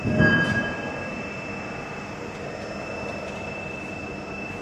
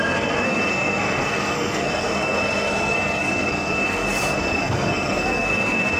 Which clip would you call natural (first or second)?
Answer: first